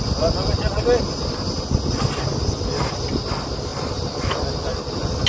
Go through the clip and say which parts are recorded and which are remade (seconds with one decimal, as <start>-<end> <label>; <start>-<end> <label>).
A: 0.0-5.3 recorded